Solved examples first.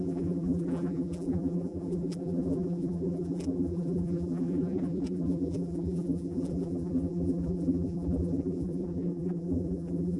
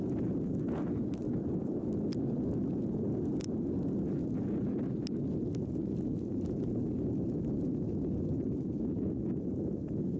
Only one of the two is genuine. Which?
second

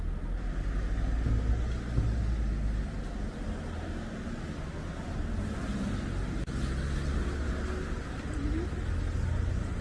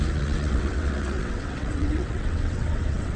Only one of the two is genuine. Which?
first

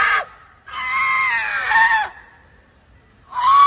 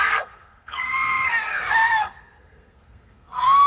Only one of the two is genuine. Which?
first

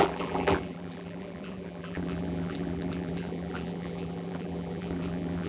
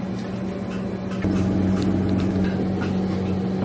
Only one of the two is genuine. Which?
second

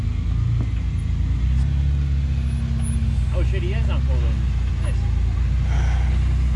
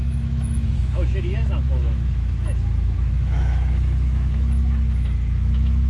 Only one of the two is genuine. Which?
first